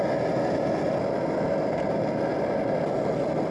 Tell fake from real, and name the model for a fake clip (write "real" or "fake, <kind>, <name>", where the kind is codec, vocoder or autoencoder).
real